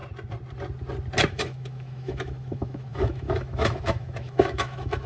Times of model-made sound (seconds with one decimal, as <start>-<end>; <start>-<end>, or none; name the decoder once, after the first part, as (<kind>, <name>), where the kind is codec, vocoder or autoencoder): 1.3-5.1 (autoencoder, DAC-VAE)